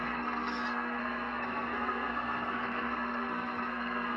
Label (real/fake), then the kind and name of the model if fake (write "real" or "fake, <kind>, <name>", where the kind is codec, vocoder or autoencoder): fake, codec, SNAC